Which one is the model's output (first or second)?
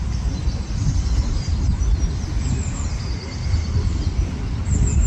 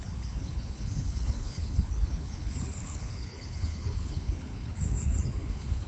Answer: second